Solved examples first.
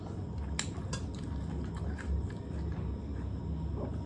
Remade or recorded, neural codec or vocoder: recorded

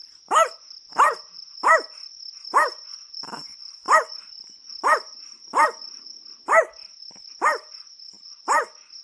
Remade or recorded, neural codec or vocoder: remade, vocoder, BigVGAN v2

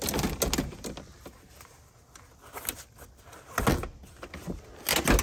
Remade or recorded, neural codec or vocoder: recorded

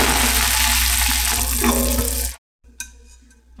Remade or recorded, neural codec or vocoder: recorded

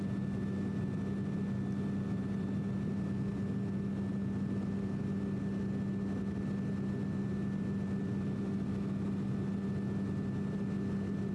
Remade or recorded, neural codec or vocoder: recorded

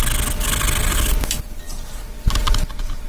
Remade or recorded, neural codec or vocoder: recorded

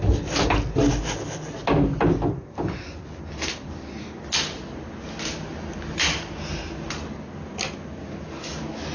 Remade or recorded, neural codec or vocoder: recorded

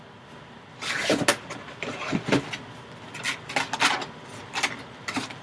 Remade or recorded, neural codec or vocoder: recorded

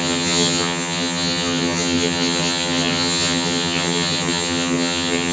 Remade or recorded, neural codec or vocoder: remade, vocoder, HiFi-GAN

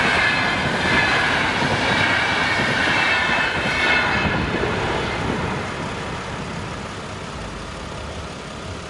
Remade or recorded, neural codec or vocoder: recorded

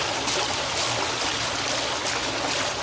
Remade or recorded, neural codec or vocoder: recorded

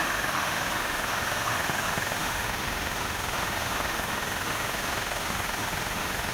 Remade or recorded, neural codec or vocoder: remade, autoencoder, DAC-VAE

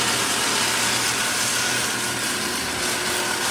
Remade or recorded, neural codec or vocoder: recorded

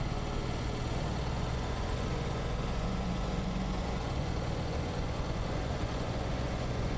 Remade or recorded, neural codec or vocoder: remade, vocoder, Vocos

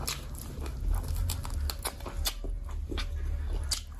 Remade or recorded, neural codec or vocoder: recorded